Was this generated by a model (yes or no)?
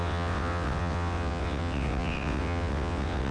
yes